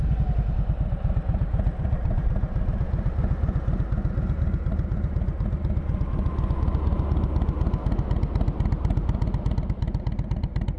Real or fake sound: real